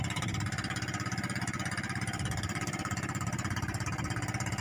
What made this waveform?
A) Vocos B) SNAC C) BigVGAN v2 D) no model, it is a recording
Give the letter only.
D